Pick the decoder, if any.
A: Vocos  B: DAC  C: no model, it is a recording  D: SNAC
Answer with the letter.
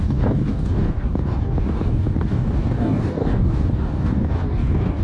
B